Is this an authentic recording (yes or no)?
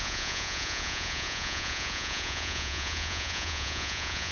no